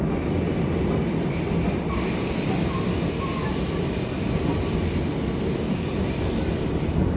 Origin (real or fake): real